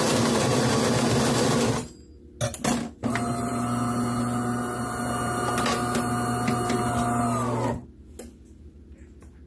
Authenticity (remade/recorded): recorded